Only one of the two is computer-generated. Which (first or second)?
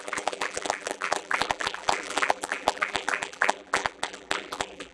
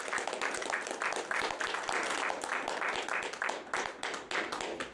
first